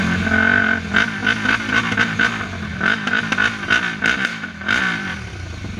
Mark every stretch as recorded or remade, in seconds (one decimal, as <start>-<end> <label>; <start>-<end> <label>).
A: 0.0-2.7 recorded; 2.7-3.2 remade; 3.2-4.3 recorded; 4.3-4.8 remade; 4.8-5.8 recorded

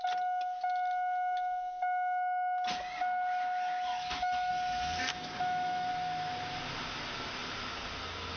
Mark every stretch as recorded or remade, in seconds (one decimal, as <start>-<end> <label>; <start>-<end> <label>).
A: 0.0-3.9 recorded; 3.9-4.5 remade; 4.5-5.1 recorded; 5.1-5.9 remade; 5.9-8.4 recorded

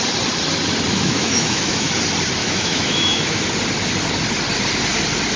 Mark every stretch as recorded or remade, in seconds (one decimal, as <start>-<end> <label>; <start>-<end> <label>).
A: 0.0-0.9 recorded; 0.9-1.9 remade; 1.9-2.4 recorded; 2.4-3.4 remade; 3.4-5.4 recorded

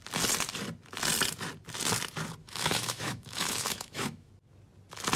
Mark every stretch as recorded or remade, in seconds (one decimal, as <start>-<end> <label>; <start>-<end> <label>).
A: 0.0-2.4 recorded; 2.4-4.3 remade; 4.3-5.2 recorded

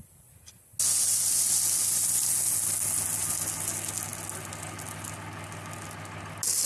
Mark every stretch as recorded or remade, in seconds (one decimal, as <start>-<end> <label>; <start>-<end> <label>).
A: 0.0-6.7 recorded

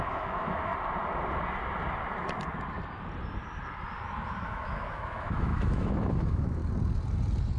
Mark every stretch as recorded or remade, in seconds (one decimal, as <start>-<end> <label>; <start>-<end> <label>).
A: 0.0-0.7 remade; 0.7-4.4 recorded; 4.4-6.6 remade; 6.6-7.6 recorded